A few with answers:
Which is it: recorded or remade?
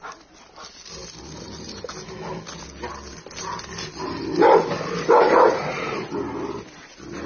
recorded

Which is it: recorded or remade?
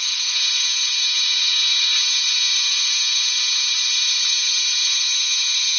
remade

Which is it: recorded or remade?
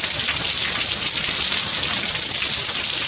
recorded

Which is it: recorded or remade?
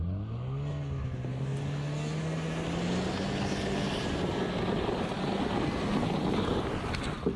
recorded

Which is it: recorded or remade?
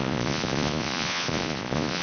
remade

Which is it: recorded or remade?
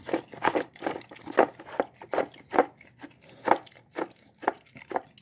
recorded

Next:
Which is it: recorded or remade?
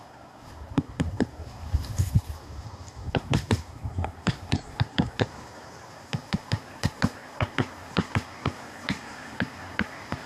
remade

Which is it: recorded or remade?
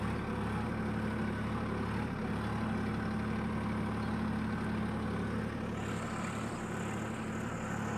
recorded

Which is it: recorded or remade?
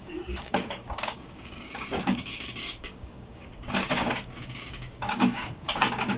remade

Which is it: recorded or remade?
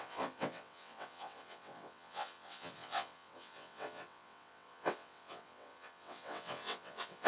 remade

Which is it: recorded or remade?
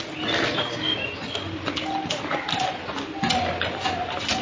recorded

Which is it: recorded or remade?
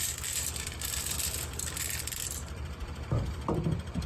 remade